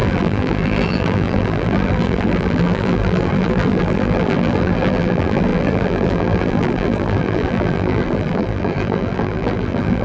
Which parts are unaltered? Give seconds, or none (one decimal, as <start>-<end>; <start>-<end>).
none